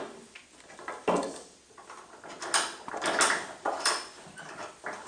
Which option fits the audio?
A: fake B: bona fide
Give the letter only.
B